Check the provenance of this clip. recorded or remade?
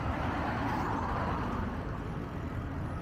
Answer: recorded